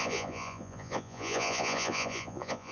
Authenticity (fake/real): fake